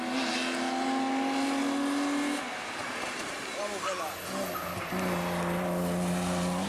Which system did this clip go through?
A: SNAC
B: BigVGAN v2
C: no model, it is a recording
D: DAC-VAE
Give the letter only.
C